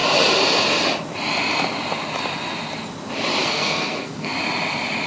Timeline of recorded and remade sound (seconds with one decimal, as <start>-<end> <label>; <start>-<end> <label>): 0.0-3.4 recorded; 3.4-4.3 remade; 4.3-5.1 recorded